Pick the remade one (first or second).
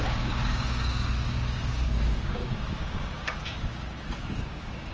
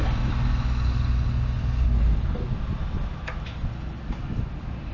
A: first